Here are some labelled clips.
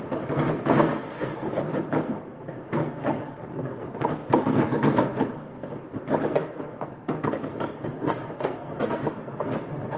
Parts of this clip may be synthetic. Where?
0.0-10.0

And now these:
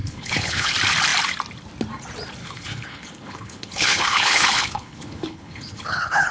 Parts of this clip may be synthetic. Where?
0.0-0.7; 2.4-6.3

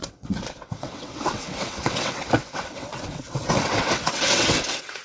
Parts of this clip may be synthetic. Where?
0.0-5.0

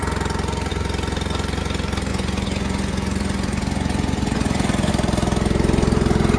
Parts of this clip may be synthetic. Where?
2.1-4.9

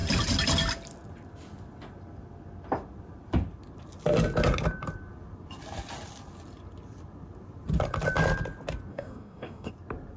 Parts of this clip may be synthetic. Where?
8.9-9.7

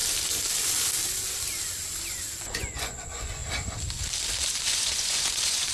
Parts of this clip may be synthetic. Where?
2.1-3.4; 4.6-5.7